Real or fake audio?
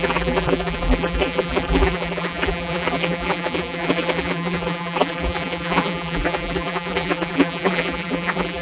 fake